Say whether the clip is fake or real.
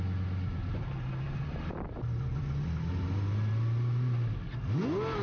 real